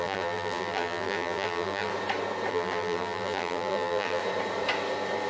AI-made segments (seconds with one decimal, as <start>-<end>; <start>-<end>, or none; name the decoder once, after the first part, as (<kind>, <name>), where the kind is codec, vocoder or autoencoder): 0.0-1.9 (vocoder, BigVGAN v2); 2.5-4.2